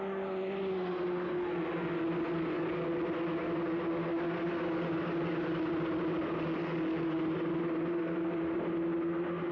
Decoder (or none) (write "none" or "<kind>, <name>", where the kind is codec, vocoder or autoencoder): none